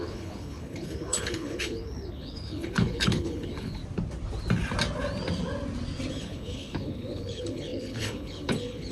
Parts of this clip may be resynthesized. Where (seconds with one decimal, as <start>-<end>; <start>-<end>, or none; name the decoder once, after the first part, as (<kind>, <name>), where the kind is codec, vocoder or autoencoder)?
0.0-3.8 (codec, HILCodec); 6.1-8.9